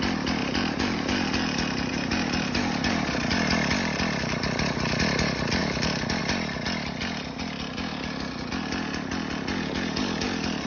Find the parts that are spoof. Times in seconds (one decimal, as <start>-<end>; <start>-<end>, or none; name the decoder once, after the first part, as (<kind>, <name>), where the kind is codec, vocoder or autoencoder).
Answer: 0.4-3.5 (vocoder, BigVGAN v2); 5.6-6.2